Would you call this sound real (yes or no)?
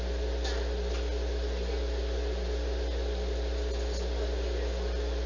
yes